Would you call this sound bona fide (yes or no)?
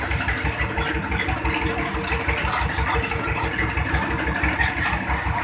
yes